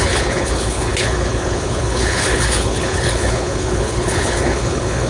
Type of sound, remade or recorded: remade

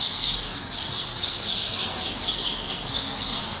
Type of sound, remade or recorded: remade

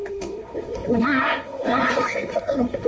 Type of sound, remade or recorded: remade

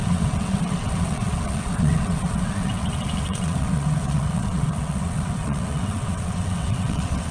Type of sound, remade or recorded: remade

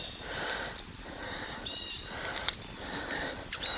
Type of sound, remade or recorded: recorded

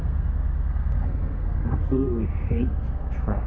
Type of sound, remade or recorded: remade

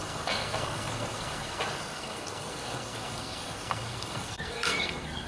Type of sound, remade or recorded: remade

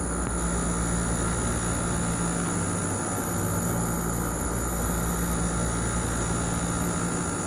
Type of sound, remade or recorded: recorded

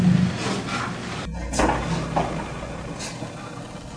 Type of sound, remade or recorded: recorded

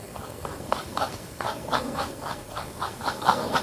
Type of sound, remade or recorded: remade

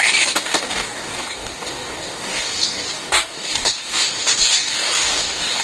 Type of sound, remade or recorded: remade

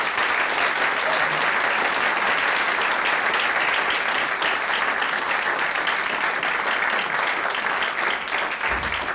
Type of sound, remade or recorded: recorded